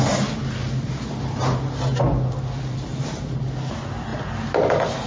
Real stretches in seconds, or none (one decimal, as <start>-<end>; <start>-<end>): 0.0-0.6; 2.0-2.9; 3.4-5.1

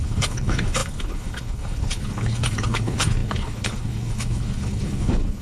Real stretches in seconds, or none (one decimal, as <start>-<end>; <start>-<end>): none

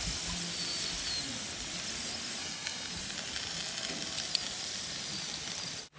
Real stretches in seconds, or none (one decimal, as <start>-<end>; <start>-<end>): 0.0-2.4; 2.9-6.0

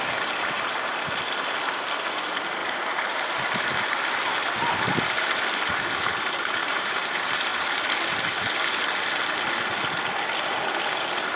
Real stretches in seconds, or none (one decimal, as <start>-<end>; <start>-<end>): 0.0-2.6; 3.3-6.6; 7.1-11.4

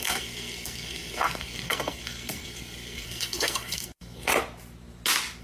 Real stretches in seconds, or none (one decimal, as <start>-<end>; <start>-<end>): 4.3-5.4